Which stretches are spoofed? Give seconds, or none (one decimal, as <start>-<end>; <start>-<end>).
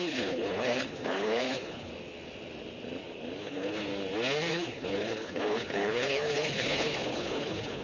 0.0-1.9; 3.4-3.9; 4.5-7.8